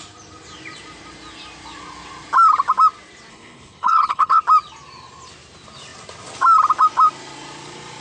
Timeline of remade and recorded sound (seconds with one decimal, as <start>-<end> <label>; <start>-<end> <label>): 0.0-3.3 recorded; 3.3-4.4 remade; 4.4-8.0 recorded